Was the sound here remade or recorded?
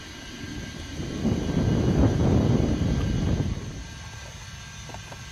recorded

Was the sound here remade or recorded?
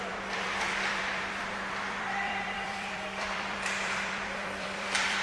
remade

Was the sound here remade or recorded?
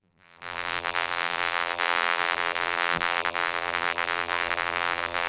remade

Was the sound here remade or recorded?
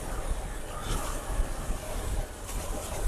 recorded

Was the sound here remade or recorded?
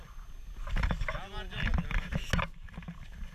recorded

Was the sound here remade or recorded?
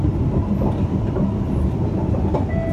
recorded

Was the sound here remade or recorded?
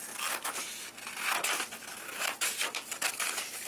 recorded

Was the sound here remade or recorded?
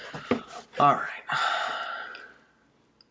recorded